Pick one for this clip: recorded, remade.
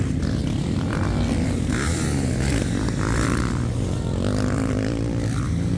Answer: remade